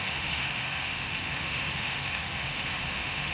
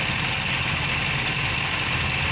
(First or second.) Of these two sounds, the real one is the second